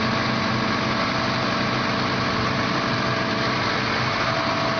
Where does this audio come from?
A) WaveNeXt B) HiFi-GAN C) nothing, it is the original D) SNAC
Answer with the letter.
C